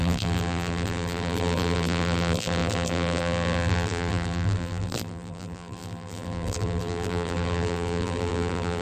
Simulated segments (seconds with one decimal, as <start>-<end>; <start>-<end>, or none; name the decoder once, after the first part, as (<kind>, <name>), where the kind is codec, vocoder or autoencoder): 0.0-8.8 (vocoder, BigVGAN v2)